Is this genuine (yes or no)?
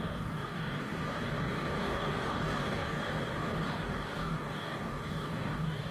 no